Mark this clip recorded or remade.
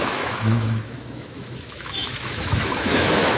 remade